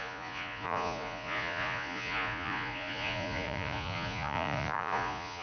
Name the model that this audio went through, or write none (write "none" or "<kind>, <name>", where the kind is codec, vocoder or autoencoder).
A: vocoder, Vocos